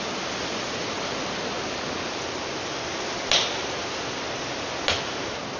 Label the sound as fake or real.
real